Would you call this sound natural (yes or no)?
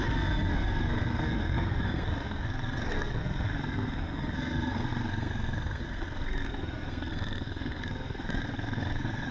no